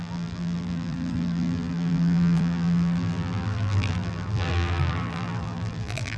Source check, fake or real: fake